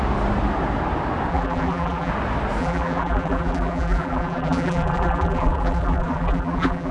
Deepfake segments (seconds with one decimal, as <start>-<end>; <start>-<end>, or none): 1.3-2.1; 2.6-6.9